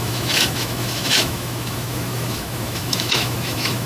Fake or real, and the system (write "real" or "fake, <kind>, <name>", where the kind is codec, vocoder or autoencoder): fake, autoencoder, DAC-VAE